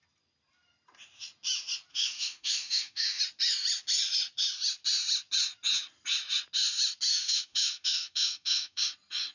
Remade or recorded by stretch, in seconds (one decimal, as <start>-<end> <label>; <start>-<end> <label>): 0.0-1.9 recorded; 1.9-3.2 remade; 3.2-7.1 recorded; 7.1-8.8 remade; 8.8-9.3 recorded